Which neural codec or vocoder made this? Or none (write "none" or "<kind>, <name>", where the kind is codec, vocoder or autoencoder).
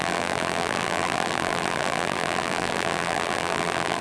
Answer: vocoder, BigVGAN v2